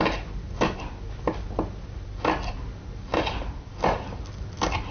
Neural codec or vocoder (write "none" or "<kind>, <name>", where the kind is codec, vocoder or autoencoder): none